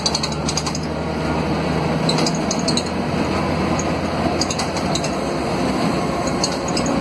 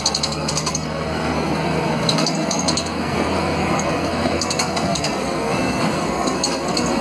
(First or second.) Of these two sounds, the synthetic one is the second